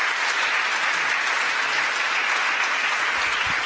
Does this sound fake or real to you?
real